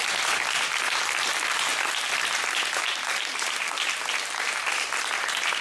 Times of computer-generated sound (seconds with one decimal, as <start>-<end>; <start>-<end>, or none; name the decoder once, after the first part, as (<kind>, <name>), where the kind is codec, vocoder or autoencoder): none